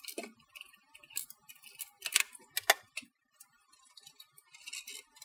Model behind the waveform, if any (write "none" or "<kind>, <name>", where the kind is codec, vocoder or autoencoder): none